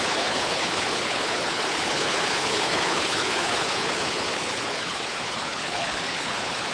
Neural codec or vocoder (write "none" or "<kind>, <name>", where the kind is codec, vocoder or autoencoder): codec, HILCodec